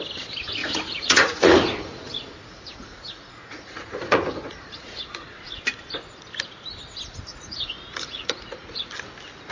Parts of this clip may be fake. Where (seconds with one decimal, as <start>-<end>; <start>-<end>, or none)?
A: 0.6-5.6; 7.3-8.9